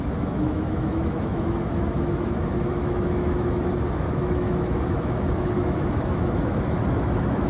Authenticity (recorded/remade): remade